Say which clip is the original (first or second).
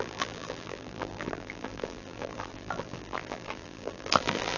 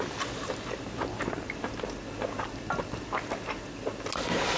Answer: second